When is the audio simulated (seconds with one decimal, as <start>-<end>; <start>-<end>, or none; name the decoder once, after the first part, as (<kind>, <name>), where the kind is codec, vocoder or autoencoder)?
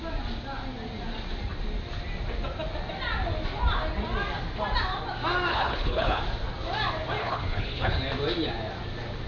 5.5-6.2 (codec, HILCodec); 7.2-7.9